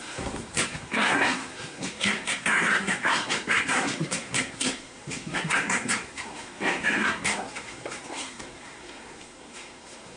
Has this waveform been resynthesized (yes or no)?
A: yes